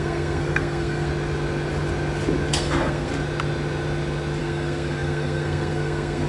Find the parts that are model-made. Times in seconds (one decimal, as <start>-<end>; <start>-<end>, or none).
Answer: 0.0-1.1; 2.5-3.1; 4.4-6.3